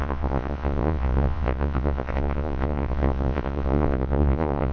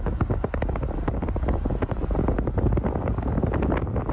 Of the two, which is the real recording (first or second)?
second